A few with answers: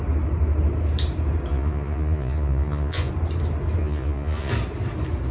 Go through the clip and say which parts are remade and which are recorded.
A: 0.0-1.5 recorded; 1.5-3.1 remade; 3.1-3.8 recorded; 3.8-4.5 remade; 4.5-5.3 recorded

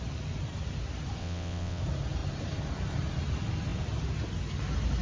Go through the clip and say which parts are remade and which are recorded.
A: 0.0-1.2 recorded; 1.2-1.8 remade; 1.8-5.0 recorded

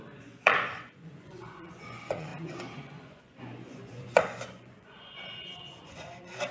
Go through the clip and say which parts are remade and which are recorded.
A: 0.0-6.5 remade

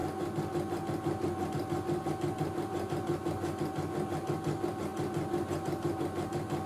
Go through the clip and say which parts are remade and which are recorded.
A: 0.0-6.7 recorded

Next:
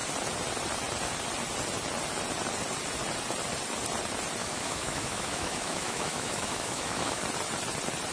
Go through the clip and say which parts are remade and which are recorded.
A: 0.0-4.4 recorded; 4.4-7.2 remade; 7.2-8.1 recorded